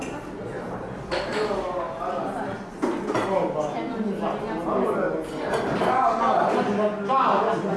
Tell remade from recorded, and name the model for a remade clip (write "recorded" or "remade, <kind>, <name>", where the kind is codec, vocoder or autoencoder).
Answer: recorded